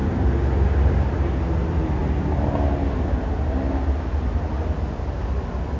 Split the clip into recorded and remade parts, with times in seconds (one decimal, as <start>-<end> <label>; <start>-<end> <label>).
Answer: 0.0-5.8 recorded